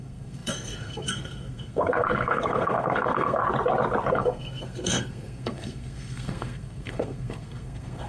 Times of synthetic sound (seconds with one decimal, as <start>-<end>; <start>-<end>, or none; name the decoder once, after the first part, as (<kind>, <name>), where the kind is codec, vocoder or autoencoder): 0.0-3.4 (codec, SNAC); 4.1-8.1